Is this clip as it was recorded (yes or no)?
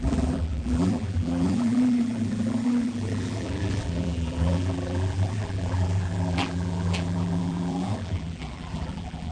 no